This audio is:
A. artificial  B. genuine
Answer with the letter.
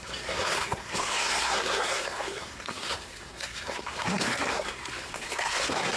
A